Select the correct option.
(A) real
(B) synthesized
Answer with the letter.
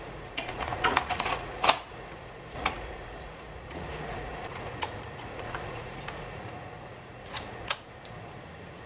B